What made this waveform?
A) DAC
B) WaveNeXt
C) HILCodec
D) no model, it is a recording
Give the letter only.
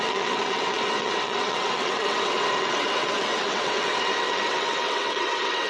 B